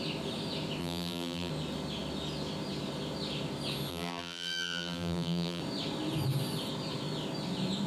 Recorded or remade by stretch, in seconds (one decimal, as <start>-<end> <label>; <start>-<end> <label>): 0.0-0.8 recorded; 0.8-1.5 remade; 1.5-3.9 recorded; 3.9-5.6 remade; 5.6-7.9 recorded